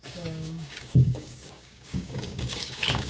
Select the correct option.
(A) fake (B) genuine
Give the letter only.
A